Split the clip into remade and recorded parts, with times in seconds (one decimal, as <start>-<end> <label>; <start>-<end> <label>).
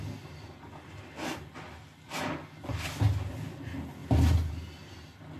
0.0-5.4 recorded